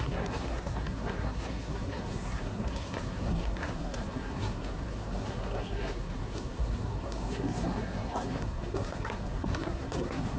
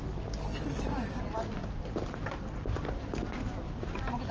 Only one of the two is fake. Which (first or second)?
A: first